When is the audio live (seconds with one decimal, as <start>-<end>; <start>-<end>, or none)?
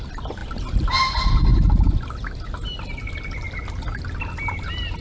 0.0-5.0